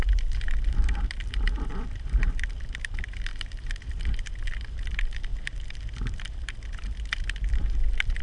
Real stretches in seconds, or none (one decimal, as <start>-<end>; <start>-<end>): none